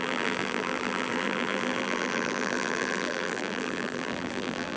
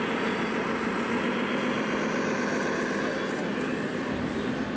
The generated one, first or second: first